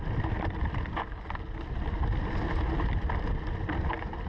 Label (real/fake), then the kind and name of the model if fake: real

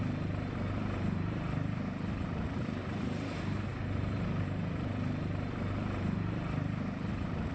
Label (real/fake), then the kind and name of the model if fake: fake, vocoder, BigVGAN v2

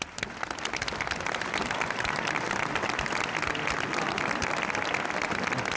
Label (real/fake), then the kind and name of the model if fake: real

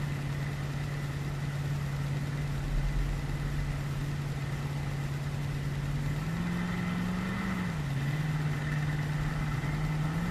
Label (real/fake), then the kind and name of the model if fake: real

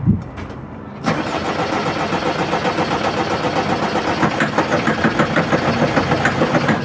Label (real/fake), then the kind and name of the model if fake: real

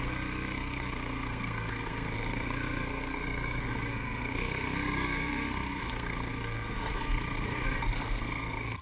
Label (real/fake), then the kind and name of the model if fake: fake, codec, SNAC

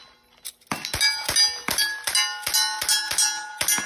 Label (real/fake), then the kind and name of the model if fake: real